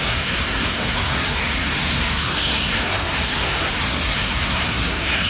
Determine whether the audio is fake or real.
fake